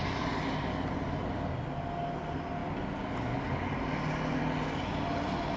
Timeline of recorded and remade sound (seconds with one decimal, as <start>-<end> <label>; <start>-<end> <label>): 0.0-5.6 recorded